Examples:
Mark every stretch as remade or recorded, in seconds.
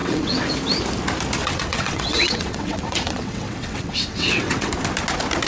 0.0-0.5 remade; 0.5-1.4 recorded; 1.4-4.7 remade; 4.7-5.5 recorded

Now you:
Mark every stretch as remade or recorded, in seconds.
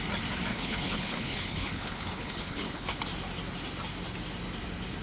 0.0-0.5 recorded; 0.5-3.0 remade; 3.0-5.0 recorded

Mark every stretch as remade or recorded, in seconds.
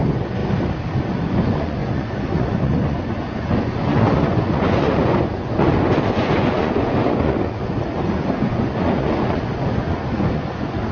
0.0-0.4 remade; 0.4-1.2 recorded; 1.2-10.9 remade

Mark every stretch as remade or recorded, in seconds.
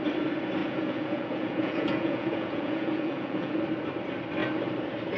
0.0-0.6 recorded; 0.6-3.6 remade; 3.6-5.2 recorded